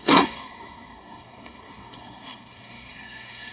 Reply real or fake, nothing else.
fake